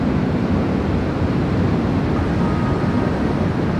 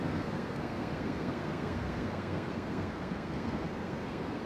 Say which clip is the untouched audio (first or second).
first